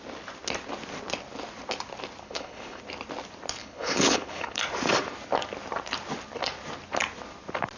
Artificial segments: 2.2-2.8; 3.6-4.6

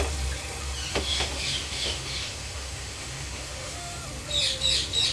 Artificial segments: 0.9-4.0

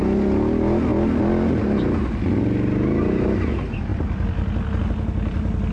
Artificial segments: none